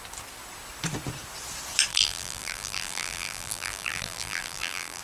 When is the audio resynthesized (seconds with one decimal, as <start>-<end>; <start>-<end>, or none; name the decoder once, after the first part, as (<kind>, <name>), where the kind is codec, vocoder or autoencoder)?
1.9-5.0 (vocoder, BigVGAN v2)